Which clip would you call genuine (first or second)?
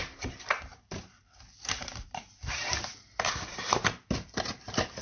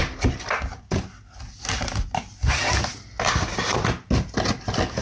second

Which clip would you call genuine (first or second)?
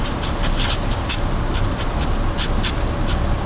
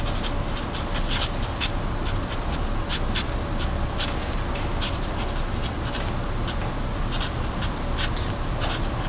second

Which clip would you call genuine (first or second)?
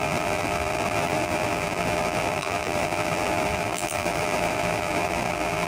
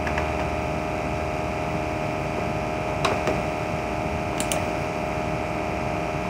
second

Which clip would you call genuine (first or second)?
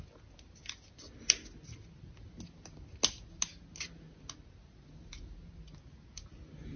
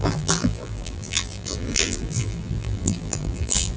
first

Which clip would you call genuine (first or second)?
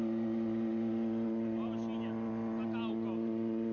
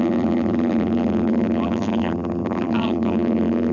first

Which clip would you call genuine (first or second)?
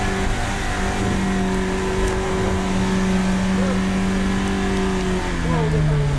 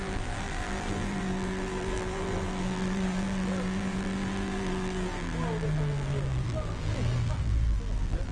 first